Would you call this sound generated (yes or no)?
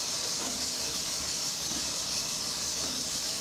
yes